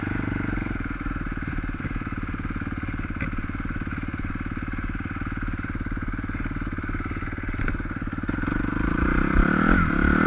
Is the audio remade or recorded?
recorded